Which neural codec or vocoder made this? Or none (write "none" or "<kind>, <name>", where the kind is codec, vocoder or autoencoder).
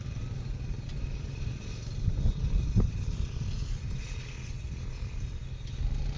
none